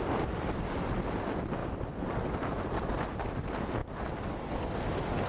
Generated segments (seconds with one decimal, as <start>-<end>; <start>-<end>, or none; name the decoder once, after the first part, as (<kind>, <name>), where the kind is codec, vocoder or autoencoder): none